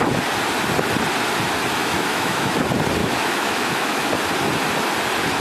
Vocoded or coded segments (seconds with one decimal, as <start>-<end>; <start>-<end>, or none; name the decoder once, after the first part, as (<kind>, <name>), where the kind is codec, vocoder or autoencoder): 1.8-2.5 (autoencoder, DAC-VAE); 3.0-4.0